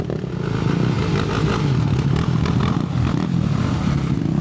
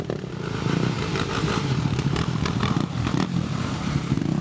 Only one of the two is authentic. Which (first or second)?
first